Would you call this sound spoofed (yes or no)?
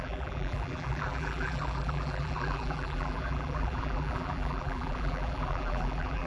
yes